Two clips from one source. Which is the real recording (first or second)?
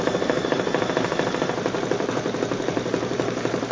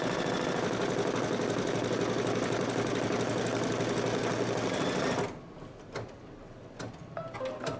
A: second